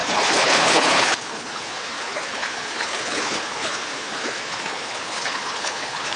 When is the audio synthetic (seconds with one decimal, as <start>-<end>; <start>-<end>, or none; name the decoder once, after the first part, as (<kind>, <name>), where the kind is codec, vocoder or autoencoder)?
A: 0.0-6.2 (codec, HILCodec)